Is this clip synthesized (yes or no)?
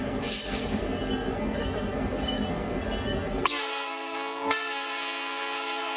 yes